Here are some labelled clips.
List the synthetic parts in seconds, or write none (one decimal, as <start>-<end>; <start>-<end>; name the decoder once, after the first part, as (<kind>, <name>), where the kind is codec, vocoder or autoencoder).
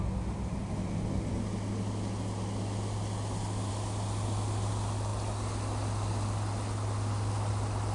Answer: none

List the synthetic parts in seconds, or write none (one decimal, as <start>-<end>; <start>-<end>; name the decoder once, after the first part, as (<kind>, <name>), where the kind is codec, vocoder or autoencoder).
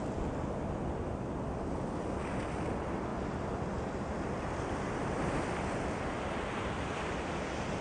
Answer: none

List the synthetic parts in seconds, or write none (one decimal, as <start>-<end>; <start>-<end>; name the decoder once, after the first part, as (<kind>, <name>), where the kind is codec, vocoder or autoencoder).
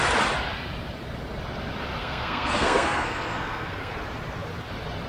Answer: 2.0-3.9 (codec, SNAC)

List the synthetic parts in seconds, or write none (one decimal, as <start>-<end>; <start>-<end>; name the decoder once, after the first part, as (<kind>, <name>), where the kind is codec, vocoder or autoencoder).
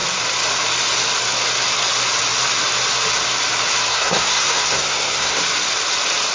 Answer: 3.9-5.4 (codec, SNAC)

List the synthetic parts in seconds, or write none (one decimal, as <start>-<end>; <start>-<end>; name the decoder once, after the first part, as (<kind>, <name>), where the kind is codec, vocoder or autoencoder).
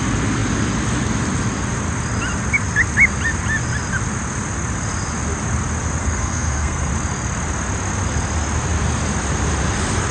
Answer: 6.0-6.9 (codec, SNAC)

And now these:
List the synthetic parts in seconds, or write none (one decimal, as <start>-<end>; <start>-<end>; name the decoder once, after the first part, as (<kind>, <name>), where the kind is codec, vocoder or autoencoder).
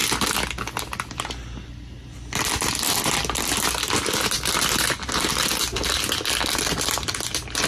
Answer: none